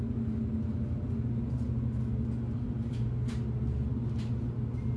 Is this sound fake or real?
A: real